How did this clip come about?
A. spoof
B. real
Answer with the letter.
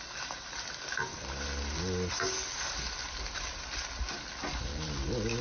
B